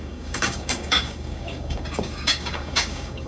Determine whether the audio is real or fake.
fake